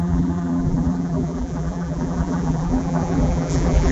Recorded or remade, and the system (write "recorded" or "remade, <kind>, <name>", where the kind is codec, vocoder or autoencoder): remade, vocoder, BigVGAN v2